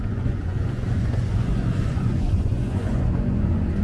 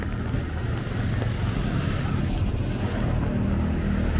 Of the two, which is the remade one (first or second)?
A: first